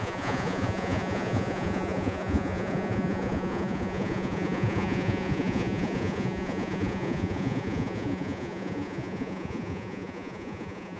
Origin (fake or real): fake